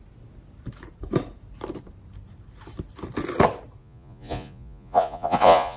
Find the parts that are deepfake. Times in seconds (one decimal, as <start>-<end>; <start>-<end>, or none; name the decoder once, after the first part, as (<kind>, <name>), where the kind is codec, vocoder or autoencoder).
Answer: 3.8-5.8 (vocoder, Vocos)